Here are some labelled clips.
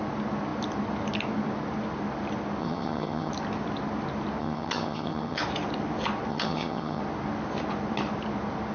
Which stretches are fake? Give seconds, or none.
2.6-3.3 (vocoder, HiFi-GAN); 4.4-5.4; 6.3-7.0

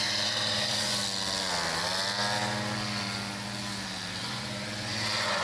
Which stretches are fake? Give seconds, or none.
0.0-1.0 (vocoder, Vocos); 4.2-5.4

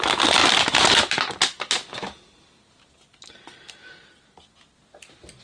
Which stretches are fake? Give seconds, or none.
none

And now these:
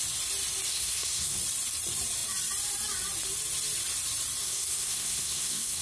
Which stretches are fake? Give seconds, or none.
0.7-1.4 (codec, SNAC); 4.4-5.8